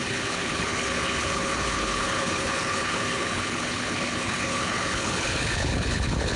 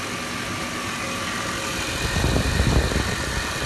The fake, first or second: first